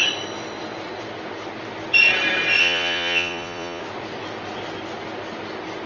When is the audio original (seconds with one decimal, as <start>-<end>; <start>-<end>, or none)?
0.0-2.6; 3.8-5.9